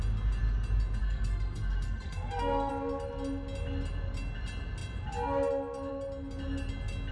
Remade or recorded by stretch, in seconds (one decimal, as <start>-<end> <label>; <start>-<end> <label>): 0.0-1.0 recorded; 1.0-2.7 remade; 2.7-7.1 recorded